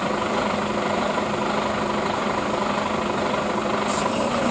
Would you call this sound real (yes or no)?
yes